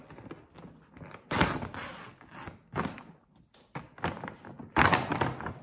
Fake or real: real